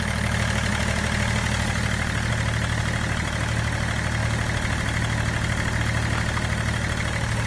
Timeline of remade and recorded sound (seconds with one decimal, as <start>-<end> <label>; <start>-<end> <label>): 0.0-7.5 recorded